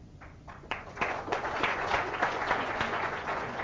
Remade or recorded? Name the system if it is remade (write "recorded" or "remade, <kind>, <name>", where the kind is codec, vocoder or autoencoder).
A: remade, vocoder, Vocos